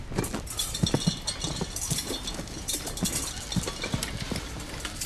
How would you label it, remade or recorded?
remade